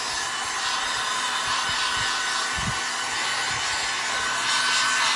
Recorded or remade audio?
recorded